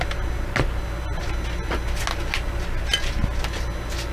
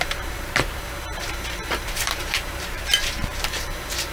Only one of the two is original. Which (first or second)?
first